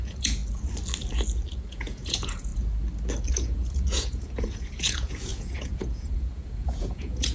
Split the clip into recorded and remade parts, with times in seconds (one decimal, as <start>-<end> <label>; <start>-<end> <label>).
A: 0.0-0.4 remade; 0.4-1.7 recorded; 1.7-2.5 remade; 2.5-3.3 recorded; 3.3-7.3 remade